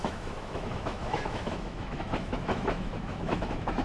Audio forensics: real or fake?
fake